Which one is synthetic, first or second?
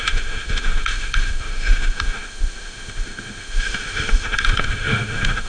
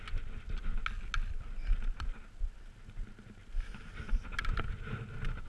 first